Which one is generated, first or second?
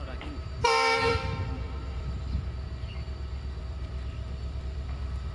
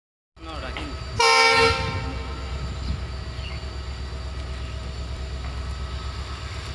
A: first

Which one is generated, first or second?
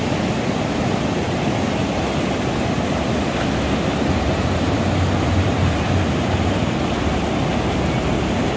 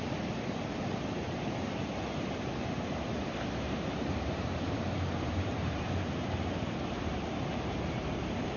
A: second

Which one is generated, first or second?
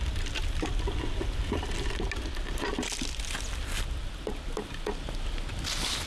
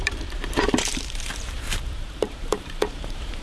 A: second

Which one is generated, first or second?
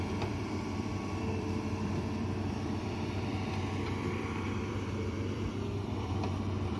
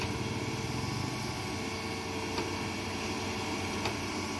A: first